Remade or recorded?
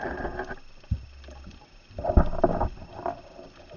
recorded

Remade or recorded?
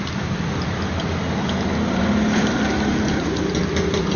recorded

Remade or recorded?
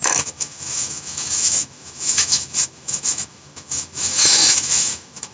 remade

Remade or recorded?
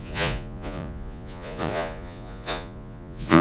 remade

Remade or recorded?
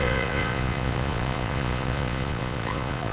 remade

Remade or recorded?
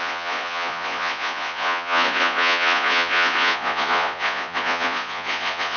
remade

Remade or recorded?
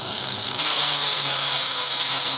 remade